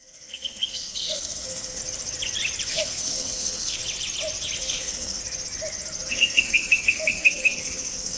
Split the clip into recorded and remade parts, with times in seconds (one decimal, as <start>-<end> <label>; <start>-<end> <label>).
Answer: 0.0-1.8 remade; 1.8-2.7 recorded; 2.7-3.8 remade; 3.8-4.6 recorded; 4.6-5.2 remade; 5.2-6.1 recorded; 6.1-8.2 remade